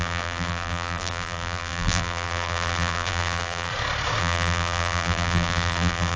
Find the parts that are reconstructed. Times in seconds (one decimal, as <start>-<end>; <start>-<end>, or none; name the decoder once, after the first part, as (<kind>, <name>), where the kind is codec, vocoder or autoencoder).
0.0-3.7 (vocoder, BigVGAN v2); 4.2-6.2